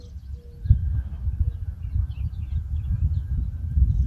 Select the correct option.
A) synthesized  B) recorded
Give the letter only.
B